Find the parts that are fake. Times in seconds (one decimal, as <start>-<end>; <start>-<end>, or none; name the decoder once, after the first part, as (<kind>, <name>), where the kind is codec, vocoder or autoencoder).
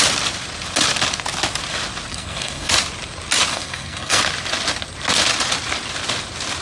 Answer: 2.1-2.7 (codec, SNAC); 3.5-4.2